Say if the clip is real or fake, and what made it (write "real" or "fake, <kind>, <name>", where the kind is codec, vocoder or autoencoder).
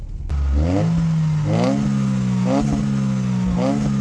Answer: real